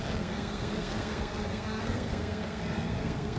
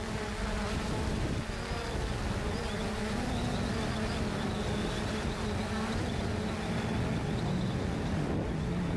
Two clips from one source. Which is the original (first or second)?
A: second